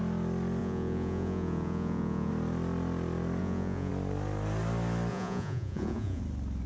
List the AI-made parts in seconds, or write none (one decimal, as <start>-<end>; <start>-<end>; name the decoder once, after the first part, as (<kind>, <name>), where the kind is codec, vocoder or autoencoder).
0.6-2.3 (vocoder, Vocos); 3.4-3.9; 5.1-6.2

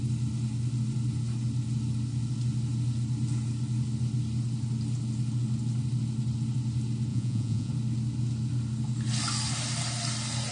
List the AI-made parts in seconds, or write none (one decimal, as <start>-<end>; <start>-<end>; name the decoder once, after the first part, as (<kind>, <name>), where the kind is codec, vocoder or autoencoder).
7.1-7.7 (vocoder, Vocos)

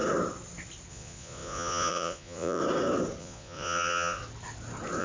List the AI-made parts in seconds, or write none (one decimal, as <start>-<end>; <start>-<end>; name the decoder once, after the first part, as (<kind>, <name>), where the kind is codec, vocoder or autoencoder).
0.9-2.6 (vocoder, Vocos); 3.2-4.2